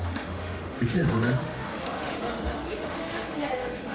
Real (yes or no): no